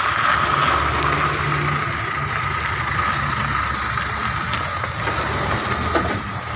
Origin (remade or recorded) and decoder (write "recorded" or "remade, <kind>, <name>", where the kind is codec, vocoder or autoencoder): recorded